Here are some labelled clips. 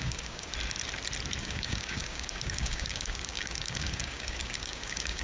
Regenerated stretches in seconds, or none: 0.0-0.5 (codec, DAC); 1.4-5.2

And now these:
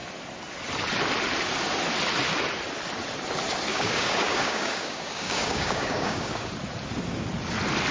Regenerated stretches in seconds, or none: 3.7-6.5 (codec, DAC)

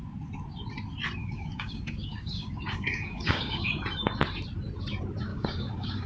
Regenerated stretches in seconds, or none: 1.2-3.7 (codec, DAC); 5.3-6.1

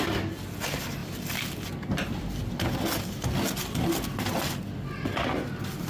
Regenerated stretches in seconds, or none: none

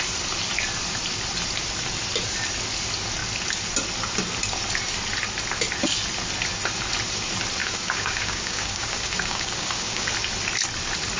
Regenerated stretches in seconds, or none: 7.6-10.1 (codec, DAC)

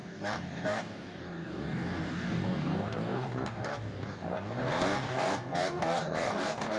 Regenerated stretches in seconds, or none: 0.0-6.8 (codec, DAC)

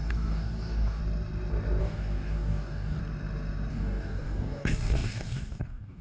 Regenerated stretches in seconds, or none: 0.0-1.0 (codec, DAC); 1.8-3.0; 3.7-6.0

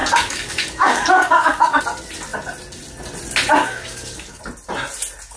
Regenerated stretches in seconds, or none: 0.0-1.8 (codec, DAC); 3.6-4.4